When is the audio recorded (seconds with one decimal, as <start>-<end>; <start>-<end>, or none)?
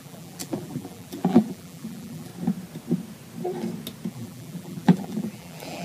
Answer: 2.3-4.1